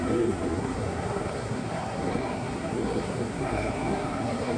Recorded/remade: remade